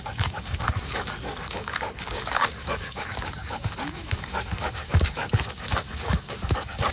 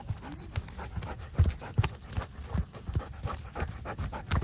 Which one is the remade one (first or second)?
first